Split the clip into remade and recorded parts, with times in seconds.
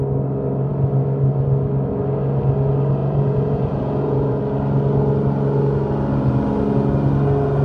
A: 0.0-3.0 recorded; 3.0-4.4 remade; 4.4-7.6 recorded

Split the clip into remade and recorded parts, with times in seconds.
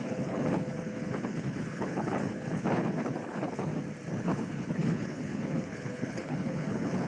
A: 0.0-3.7 remade; 3.7-4.2 recorded; 4.2-7.1 remade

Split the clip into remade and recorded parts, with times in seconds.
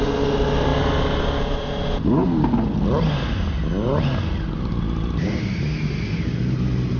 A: 0.0-7.0 recorded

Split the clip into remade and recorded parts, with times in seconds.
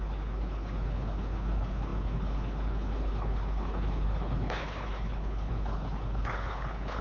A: 0.0-7.0 remade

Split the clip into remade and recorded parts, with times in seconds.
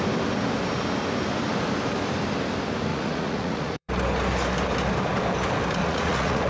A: 0.0-2.9 recorded; 2.9-3.9 remade; 3.9-5.8 recorded; 5.8-6.5 remade